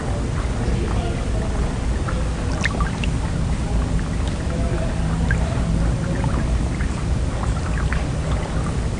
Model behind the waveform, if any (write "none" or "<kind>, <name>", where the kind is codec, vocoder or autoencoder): none